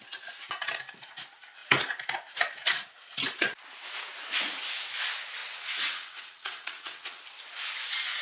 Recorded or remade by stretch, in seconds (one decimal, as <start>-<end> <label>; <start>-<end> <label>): 0.0-5.4 recorded; 5.4-7.2 remade; 7.2-8.2 recorded